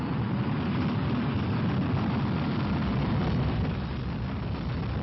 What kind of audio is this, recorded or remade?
recorded